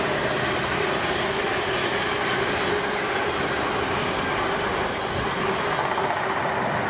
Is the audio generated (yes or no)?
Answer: no